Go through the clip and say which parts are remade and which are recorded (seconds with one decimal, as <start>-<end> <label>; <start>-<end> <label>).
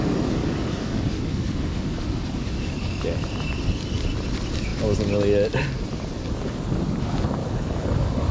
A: 0.0-0.4 recorded; 0.4-3.0 remade; 3.0-7.4 recorded; 7.4-8.3 remade